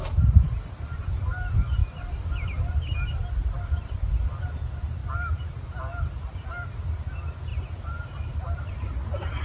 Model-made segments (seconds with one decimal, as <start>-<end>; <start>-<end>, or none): none